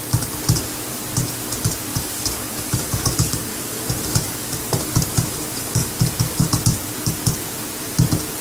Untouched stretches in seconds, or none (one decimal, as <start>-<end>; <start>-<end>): 0.0-1.9; 6.5-8.4